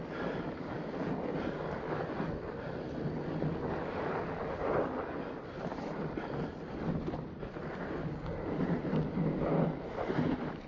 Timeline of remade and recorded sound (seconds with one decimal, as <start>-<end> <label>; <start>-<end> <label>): 0.0-10.7 recorded